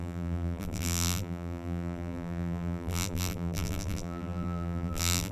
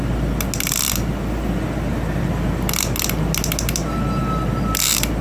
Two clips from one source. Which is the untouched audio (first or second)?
second